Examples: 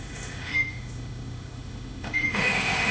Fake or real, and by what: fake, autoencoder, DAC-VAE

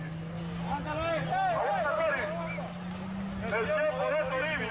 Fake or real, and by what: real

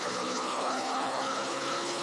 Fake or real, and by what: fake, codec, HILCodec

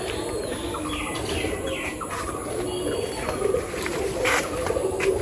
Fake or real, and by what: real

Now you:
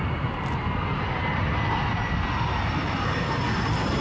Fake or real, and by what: real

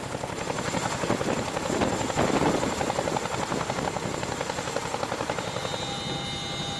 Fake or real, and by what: real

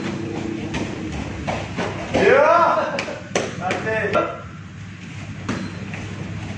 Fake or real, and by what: real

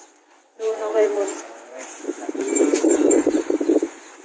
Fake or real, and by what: fake, vocoder, Vocos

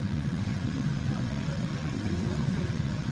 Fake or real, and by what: fake, vocoder, WaveNeXt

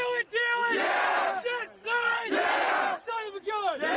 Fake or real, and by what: real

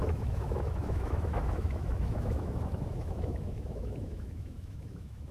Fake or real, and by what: fake, autoencoder, DAC-VAE